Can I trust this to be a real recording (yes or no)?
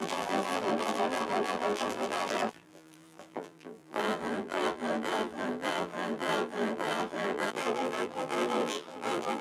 no